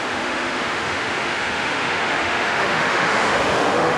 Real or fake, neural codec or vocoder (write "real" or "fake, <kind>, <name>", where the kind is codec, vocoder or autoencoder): fake, autoencoder, DAC-VAE